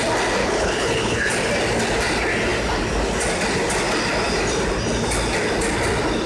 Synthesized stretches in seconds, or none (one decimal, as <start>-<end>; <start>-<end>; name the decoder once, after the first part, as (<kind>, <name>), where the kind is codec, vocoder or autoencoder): 0.4-1.3 (codec, HILCodec)